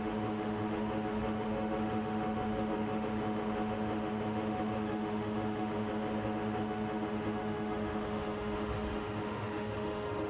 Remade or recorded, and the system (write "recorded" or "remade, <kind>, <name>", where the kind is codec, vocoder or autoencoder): remade, autoencoder, DAC-VAE